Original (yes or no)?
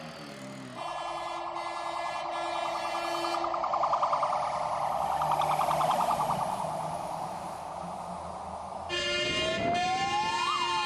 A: yes